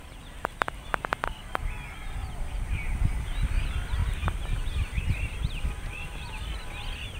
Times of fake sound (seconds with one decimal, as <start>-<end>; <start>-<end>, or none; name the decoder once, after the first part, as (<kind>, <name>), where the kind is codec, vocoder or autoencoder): none